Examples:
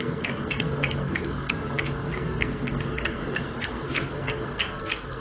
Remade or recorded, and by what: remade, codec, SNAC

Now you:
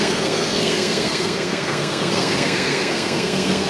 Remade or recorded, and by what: remade, codec, SNAC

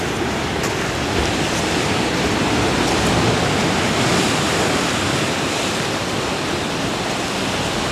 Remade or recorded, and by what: recorded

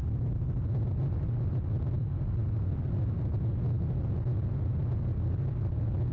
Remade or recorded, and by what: recorded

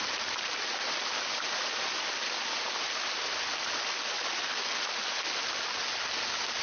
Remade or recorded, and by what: recorded